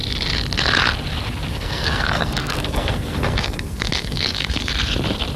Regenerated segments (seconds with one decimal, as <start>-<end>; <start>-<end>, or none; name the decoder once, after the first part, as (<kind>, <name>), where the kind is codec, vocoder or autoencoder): 1.5-4.7 (codec, SNAC)